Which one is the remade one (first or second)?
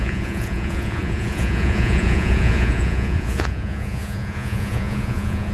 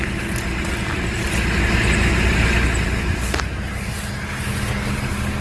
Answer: first